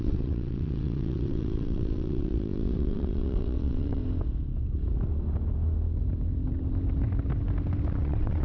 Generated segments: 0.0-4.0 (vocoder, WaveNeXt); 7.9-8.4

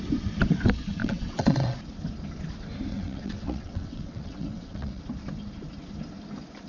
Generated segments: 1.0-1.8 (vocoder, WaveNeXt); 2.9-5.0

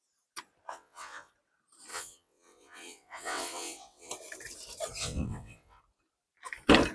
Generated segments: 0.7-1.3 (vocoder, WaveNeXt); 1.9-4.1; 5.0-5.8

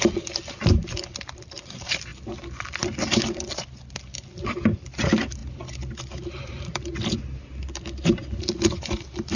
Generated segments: none